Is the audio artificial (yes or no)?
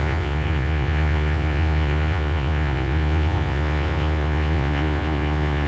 yes